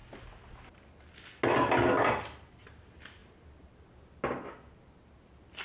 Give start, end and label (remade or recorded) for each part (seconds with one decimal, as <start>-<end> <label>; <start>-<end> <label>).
0.0-5.6 recorded